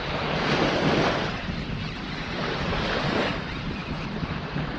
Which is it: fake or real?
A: real